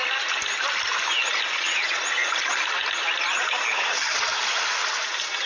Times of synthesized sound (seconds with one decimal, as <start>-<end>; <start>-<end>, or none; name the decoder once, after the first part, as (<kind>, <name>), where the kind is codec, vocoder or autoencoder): 1.5-2.0 (vocoder, WaveNeXt)